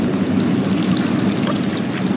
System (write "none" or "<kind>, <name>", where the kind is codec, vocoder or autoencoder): none